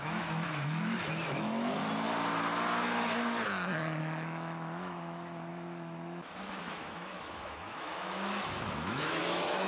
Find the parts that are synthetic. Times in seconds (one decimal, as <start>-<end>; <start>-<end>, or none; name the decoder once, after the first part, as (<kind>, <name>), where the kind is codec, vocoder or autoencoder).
0.0-1.8 (autoencoder, DAC-VAE); 4.0-9.7